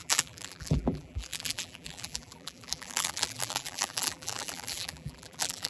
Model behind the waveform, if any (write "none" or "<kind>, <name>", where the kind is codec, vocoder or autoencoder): vocoder, BigVGAN v2